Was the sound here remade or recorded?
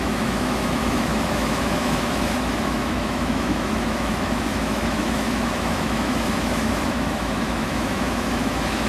remade